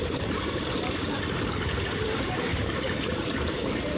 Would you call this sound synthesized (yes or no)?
yes